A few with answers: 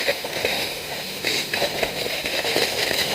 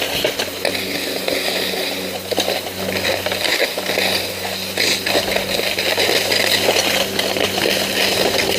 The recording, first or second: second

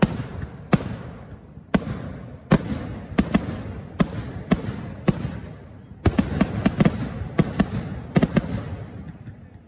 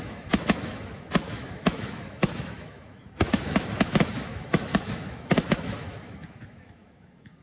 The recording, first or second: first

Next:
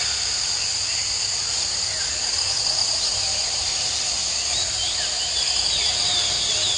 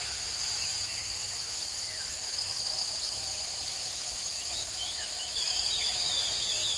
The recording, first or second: first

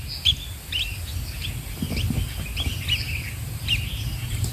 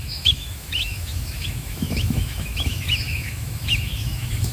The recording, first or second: first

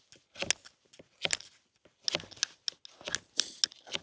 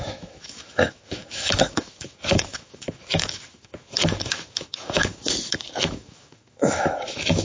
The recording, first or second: first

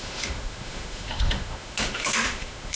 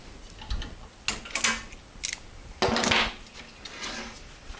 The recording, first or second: second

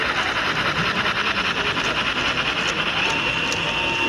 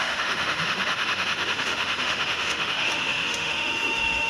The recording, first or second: first